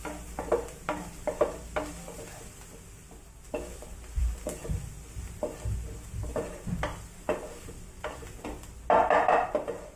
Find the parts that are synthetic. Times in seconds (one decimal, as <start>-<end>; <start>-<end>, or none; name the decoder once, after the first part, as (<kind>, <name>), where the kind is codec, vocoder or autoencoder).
none